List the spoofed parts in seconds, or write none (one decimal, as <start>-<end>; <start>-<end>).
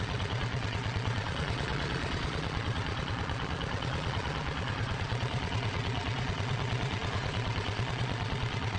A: 0.0-8.8